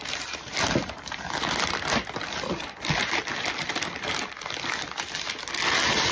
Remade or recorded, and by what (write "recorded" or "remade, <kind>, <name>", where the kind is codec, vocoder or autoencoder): recorded